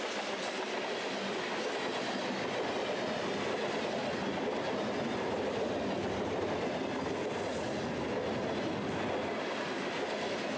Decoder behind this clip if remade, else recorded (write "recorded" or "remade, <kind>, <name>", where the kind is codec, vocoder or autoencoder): recorded